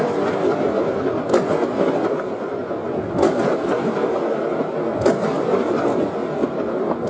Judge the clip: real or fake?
real